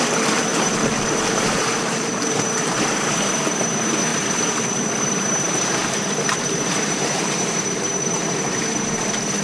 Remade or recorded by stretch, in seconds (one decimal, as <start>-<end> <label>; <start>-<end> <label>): 0.0-0.5 recorded; 0.5-2.4 remade; 2.4-4.1 recorded; 4.1-5.2 remade; 5.2-5.8 recorded; 5.8-9.0 remade; 9.0-9.4 recorded